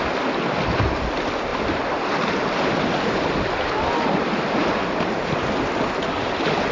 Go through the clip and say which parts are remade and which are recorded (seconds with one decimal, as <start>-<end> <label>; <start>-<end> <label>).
0.0-6.7 recorded